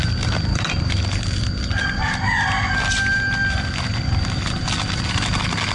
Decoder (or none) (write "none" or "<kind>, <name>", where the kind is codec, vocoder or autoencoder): none